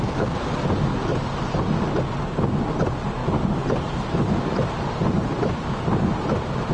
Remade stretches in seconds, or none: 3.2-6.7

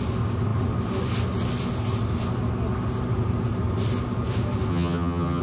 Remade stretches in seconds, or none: 4.7-5.4

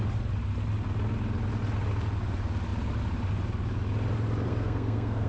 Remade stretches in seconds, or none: 4.5-5.3

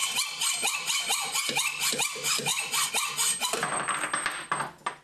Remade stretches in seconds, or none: none